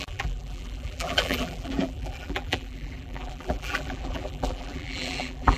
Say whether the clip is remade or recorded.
remade